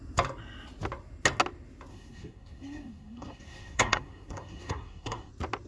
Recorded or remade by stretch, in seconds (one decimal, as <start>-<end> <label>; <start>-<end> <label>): 0.0-1.9 recorded; 1.9-5.3 remade; 5.3-5.7 recorded